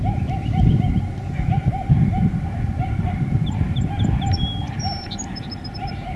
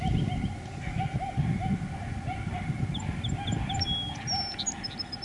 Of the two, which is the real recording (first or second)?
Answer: second